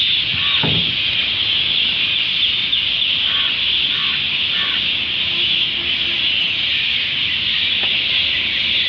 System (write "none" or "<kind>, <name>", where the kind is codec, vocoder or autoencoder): none